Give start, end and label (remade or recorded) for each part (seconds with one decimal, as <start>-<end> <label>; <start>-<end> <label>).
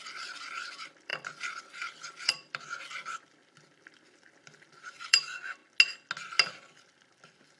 0.0-5.6 remade; 5.6-6.5 recorded; 6.5-7.6 remade